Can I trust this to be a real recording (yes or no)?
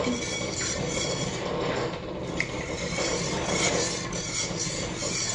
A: yes